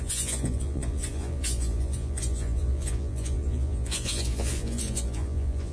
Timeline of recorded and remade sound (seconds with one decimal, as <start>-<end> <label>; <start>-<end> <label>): 0.0-5.7 remade